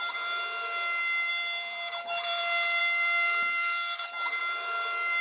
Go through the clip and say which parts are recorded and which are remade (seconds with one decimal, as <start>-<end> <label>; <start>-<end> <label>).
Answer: 0.0-1.3 recorded; 1.3-2.4 remade; 2.4-2.8 recorded; 2.8-4.4 remade; 4.4-5.2 recorded